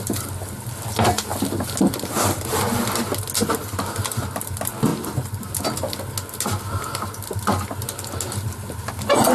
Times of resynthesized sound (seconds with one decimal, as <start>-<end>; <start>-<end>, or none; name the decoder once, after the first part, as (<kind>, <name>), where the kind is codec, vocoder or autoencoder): 4.9-5.5 (vocoder, BigVGAN v2)